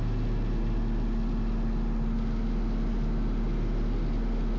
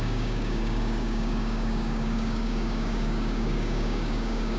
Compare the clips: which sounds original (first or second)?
first